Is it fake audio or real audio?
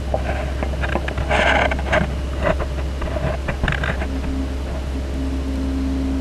real